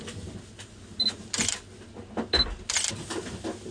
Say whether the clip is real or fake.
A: real